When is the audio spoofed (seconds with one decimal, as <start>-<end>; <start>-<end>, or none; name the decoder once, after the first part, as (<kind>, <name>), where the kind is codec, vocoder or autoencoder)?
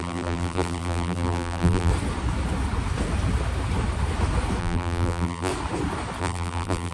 0.0-1.9 (vocoder, BigVGAN v2); 4.6-5.5; 6.2-6.9